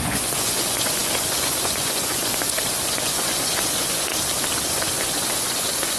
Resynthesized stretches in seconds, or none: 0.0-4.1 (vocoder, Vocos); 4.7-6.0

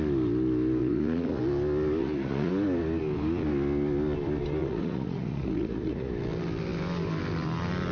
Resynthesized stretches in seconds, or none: 0.8-1.4 (vocoder, Vocos); 2.0-2.5; 4.6-6.1